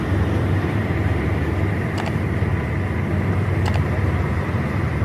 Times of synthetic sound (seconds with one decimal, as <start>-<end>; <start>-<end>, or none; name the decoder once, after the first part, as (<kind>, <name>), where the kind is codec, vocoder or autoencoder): 0.0-2.5 (vocoder, BigVGAN v2); 3.1-5.0